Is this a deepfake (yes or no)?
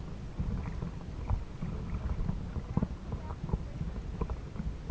no